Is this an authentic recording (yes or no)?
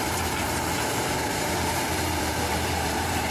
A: no